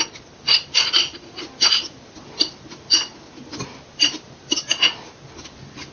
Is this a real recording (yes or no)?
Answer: yes